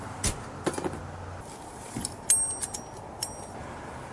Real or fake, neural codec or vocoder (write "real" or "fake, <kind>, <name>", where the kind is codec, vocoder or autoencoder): real